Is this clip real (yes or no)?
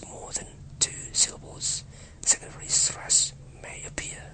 no